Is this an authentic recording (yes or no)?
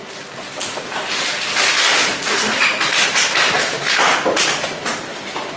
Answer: yes